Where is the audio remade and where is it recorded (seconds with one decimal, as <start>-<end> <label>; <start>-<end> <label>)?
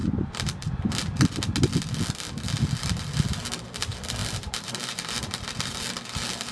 0.0-0.9 remade; 0.9-4.2 recorded; 4.2-5.8 remade; 5.8-6.5 recorded